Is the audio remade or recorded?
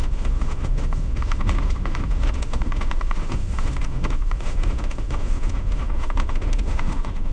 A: remade